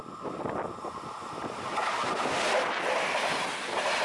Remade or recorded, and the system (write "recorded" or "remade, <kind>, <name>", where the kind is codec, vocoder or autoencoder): recorded